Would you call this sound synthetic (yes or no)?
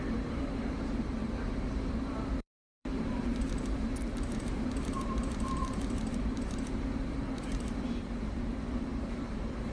yes